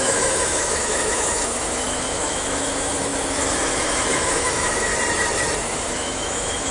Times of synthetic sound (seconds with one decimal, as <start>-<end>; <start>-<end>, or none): 0.0-4.9; 5.6-6.7